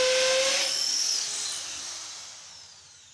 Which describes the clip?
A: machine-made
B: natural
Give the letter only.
B